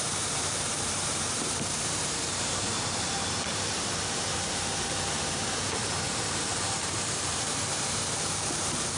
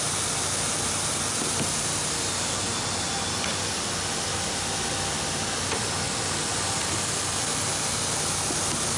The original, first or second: second